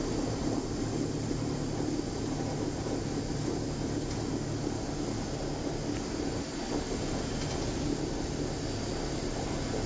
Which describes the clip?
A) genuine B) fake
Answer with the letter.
A